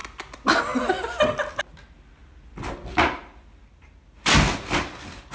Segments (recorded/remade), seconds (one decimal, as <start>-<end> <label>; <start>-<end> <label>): 0.0-5.3 recorded